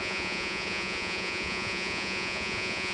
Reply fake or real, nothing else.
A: fake